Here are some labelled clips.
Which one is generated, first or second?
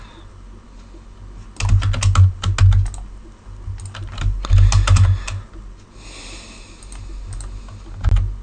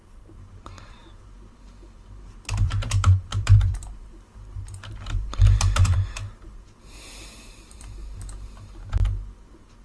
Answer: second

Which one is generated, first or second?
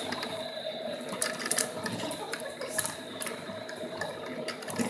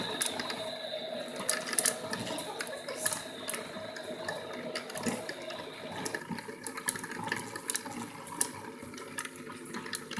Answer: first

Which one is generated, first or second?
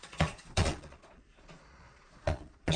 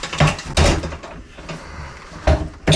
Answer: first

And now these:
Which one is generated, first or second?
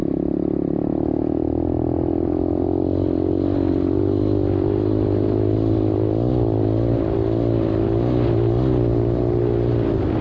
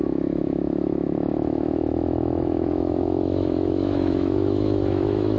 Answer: second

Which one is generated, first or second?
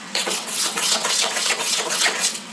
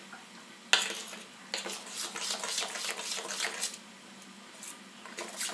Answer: first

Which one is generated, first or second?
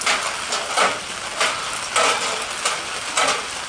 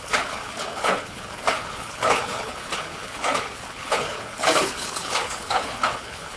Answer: second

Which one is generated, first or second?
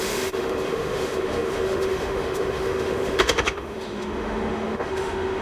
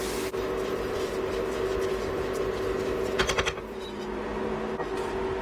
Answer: first